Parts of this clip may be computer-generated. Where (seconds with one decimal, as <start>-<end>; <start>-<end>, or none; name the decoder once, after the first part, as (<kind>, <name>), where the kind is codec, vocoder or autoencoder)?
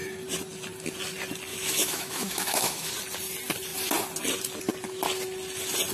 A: 1.5-2.9 (autoencoder, DAC-VAE)